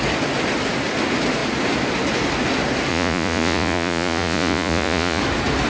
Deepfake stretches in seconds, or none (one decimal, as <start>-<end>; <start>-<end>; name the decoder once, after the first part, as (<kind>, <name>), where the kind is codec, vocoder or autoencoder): 2.9-5.2 (vocoder, Vocos)